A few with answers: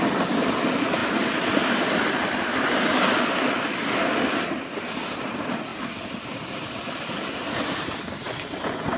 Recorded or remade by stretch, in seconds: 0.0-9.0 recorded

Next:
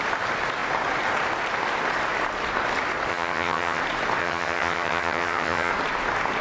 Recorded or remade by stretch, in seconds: 0.0-3.1 recorded; 3.1-3.8 remade; 3.8-4.2 recorded; 4.2-5.7 remade; 5.7-6.4 recorded

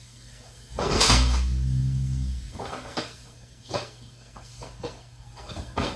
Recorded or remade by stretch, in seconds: 0.0-6.0 remade

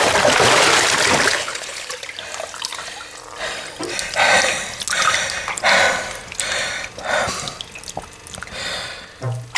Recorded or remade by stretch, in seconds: 0.0-1.3 recorded; 1.3-1.9 remade; 1.9-9.6 recorded

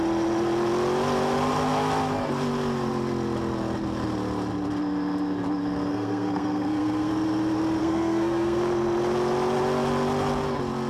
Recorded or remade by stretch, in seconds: 0.0-5.9 recorded; 5.9-7.1 remade; 7.1-7.8 recorded; 7.8-8.6 remade; 8.6-10.9 recorded